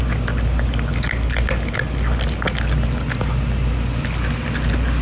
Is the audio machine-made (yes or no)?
no